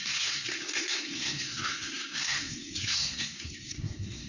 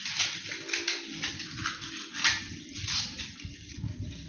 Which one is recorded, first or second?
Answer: second